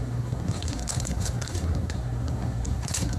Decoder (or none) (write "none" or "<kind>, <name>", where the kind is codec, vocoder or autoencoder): codec, SNAC